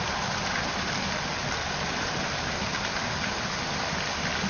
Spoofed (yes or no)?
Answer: no